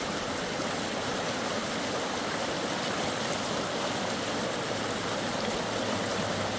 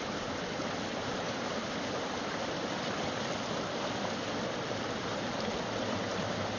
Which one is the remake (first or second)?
second